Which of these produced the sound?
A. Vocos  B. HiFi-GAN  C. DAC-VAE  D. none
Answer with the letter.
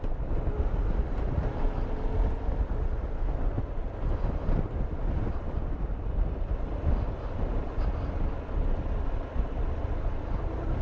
D